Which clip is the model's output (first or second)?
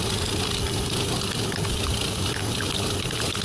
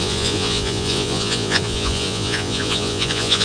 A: second